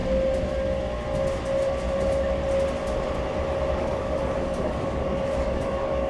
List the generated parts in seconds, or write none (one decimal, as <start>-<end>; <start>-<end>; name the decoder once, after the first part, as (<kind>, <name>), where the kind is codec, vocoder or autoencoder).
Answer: 3.7-6.1 (codec, DAC)